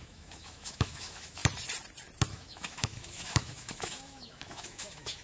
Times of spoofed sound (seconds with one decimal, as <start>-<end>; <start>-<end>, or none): 0.0-1.4; 2.3-5.2